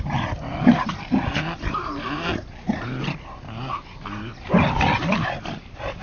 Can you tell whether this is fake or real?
real